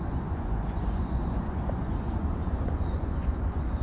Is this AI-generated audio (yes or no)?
yes